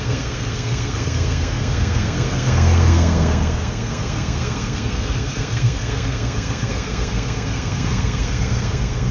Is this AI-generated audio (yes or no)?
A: yes